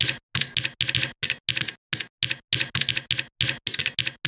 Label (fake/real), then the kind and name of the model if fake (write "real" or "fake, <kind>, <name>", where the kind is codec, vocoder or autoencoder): real